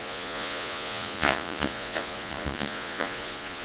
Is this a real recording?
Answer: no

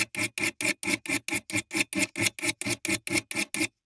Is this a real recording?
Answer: yes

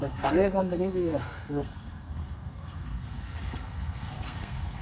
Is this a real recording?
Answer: no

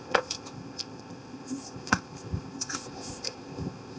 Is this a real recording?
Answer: no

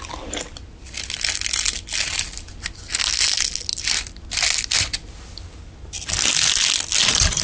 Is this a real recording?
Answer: yes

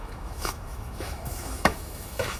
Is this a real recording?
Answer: no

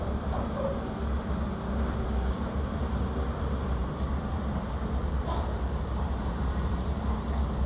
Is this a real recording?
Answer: no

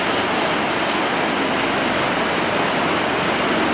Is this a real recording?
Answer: yes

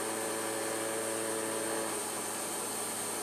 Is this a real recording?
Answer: yes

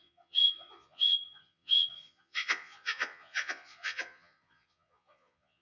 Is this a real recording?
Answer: no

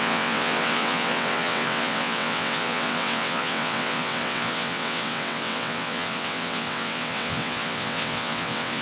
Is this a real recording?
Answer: no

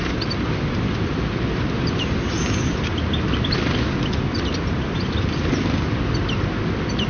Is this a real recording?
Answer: yes